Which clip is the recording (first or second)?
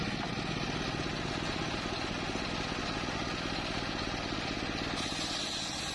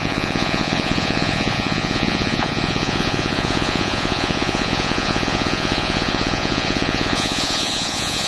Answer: first